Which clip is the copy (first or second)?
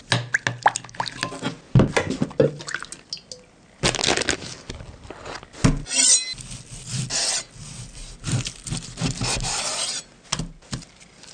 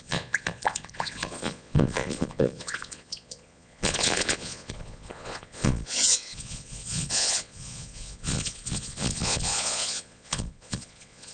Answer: second